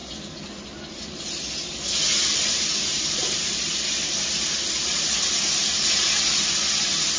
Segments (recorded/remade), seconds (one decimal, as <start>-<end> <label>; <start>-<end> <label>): 0.0-7.2 recorded